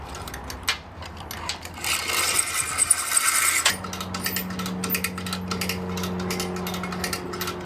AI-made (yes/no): no